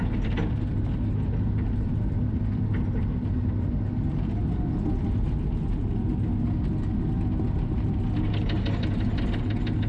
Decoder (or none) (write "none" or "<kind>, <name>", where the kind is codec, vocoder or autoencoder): none